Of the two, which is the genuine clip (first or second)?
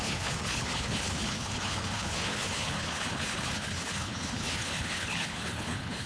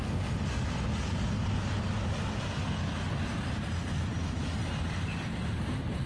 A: second